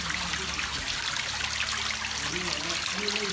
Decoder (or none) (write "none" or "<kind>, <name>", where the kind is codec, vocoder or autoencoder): none